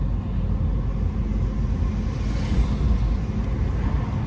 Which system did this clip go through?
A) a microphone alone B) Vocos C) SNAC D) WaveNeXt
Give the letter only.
A